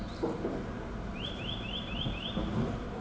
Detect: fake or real real